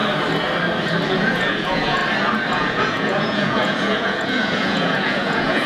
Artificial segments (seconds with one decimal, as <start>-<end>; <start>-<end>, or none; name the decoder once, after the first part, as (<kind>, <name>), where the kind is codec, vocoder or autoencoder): 1.1-2.0 (vocoder, Vocos); 2.5-5.7